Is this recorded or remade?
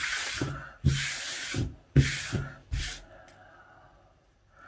recorded